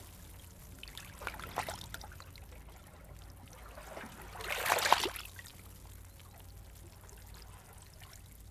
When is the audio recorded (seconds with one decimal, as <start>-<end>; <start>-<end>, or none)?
0.0-8.5